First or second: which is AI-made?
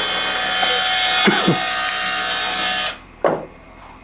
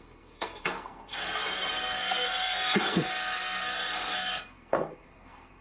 second